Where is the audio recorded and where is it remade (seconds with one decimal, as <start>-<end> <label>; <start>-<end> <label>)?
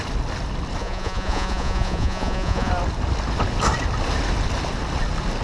0.0-0.8 recorded; 0.8-2.7 remade; 2.7-5.4 recorded